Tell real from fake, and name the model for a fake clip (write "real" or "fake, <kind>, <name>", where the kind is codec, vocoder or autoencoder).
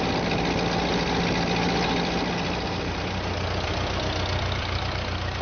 real